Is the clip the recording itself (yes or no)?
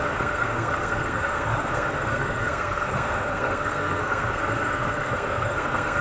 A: no